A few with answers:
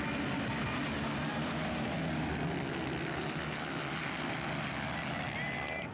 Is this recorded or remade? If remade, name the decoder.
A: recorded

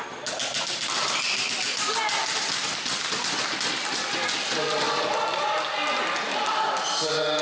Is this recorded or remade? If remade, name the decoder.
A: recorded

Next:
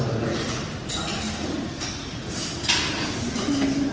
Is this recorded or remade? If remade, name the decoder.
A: recorded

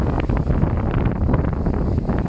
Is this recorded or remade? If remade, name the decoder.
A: recorded